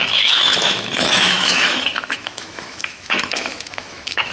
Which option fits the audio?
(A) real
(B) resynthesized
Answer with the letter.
B